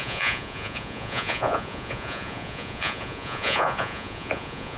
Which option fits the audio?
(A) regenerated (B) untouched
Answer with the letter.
A